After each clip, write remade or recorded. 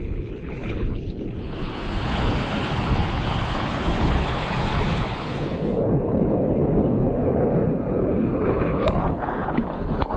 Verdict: remade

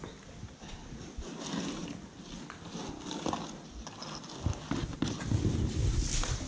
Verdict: recorded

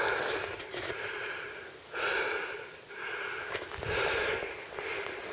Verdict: recorded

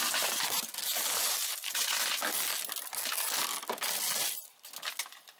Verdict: recorded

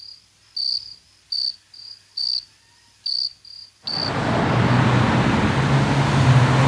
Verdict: recorded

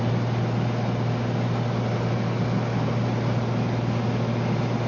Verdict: recorded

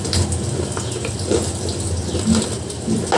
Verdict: recorded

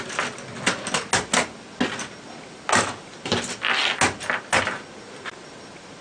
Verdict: recorded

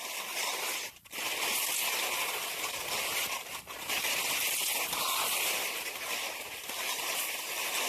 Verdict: recorded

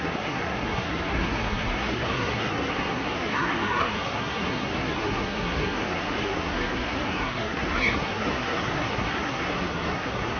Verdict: remade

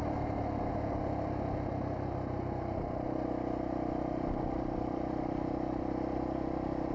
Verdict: recorded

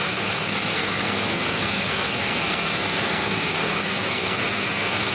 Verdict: remade